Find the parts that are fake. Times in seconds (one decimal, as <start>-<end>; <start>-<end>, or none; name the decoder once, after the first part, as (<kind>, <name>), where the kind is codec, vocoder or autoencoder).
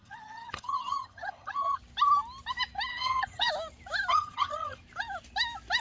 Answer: 0.0-1.8 (vocoder, HiFi-GAN); 2.9-3.5; 4.1-4.8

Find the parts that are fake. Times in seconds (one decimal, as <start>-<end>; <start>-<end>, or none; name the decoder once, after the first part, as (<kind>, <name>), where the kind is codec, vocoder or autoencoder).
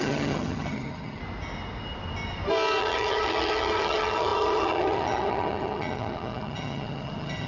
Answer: 0.0-1.2 (vocoder, HiFi-GAN); 2.8-7.5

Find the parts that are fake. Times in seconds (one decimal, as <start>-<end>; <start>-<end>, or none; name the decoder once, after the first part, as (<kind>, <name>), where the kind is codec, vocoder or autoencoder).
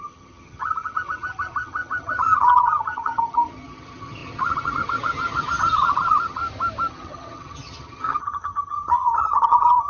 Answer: 0.0-6.4 (vocoder, HiFi-GAN); 6.9-9.9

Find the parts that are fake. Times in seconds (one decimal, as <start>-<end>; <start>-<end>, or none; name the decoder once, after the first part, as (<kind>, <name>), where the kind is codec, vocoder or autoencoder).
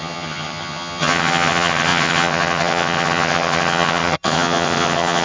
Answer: 0.0-5.2 (vocoder, HiFi-GAN)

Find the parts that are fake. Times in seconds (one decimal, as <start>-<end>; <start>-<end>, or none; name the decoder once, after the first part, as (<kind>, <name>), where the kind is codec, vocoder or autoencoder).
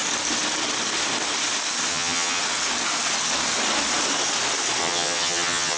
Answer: 1.9-2.4 (vocoder, HiFi-GAN); 4.8-5.8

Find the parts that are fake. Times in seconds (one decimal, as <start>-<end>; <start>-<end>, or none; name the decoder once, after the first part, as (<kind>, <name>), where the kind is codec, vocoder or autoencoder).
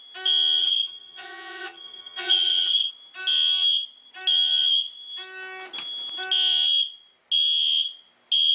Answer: 0.6-2.9 (vocoder, HiFi-GAN)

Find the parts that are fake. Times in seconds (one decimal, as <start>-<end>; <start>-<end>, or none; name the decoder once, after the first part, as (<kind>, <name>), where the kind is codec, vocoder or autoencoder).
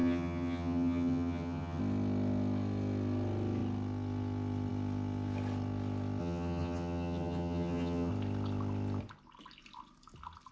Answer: 0.0-1.8 (vocoder, HiFi-GAN); 6.2-8.1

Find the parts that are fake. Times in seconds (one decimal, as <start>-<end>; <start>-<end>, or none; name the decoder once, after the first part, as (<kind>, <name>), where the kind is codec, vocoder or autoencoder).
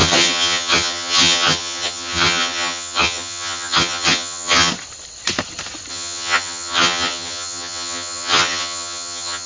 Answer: 0.0-4.7 (vocoder, HiFi-GAN); 5.9-9.5